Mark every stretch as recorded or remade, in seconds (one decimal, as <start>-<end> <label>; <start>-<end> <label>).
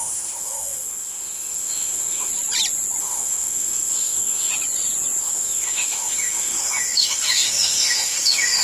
0.0-2.3 remade; 2.3-3.0 recorded; 3.0-4.5 remade; 4.5-5.2 recorded; 5.2-8.6 remade